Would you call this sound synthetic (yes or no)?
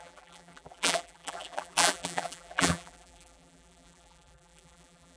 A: yes